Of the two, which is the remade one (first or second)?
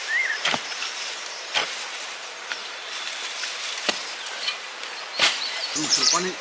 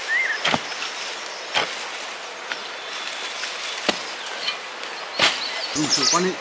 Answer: first